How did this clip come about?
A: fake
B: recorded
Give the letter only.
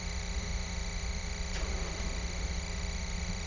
A